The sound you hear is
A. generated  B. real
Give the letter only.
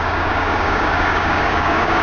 A